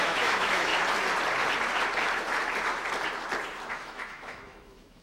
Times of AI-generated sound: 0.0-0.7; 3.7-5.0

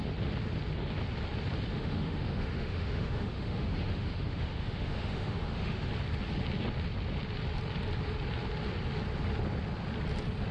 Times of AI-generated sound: 1.7-5.9

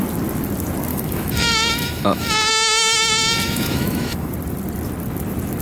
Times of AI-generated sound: 0.9-4.3